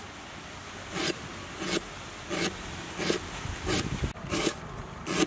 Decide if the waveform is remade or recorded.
recorded